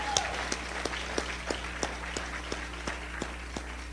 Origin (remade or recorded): recorded